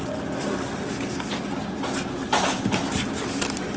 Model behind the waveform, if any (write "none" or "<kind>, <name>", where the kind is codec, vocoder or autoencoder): none